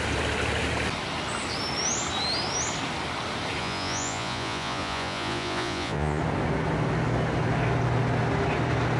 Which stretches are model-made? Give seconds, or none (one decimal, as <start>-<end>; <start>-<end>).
3.6-6.2